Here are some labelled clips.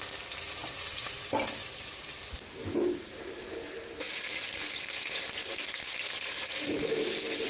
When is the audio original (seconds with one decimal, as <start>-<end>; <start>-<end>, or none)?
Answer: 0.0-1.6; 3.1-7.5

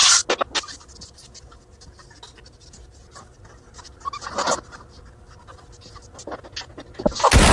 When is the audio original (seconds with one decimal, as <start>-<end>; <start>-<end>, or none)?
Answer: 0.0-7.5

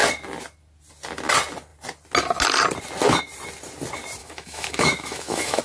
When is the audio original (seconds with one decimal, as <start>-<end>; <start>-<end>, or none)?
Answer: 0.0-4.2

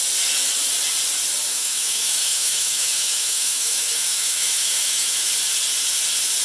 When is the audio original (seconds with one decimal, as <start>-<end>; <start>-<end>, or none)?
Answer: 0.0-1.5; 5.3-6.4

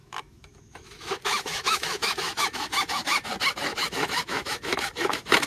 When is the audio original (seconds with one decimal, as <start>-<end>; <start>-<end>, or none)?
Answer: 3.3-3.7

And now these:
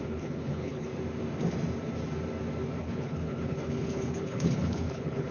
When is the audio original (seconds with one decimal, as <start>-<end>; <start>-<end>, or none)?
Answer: 0.9-2.8